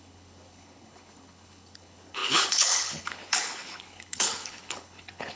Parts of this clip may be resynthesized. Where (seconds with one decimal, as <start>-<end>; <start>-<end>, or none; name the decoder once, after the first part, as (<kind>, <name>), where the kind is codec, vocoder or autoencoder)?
0.0-5.4 (codec, HILCodec)